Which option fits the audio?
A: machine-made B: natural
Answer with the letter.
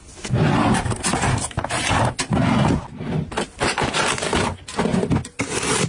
B